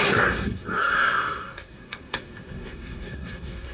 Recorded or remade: remade